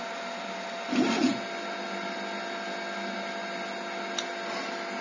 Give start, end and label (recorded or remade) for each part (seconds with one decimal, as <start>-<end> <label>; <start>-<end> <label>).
0.0-5.0 recorded